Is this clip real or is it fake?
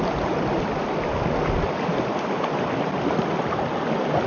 real